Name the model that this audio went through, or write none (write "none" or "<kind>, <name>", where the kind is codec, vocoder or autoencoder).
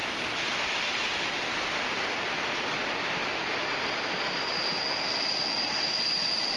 none